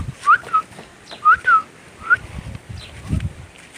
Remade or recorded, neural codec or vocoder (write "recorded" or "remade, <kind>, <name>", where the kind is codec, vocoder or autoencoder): recorded